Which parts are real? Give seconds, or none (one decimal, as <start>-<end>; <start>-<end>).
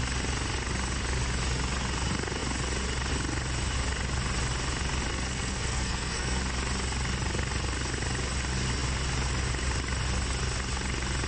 0.0-5.1; 6.4-11.3